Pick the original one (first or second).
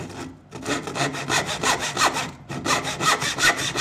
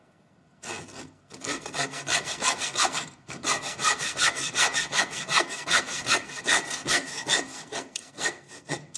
first